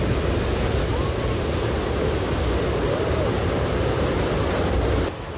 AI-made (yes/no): no